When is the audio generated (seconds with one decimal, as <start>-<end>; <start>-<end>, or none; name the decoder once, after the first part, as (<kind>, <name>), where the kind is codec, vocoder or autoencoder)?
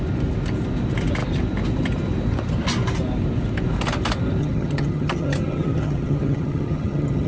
4.4-7.3 (vocoder, HiFi-GAN)